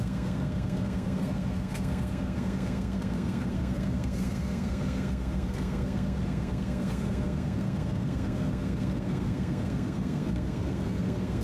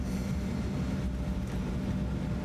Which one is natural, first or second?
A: second